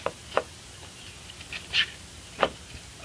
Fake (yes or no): no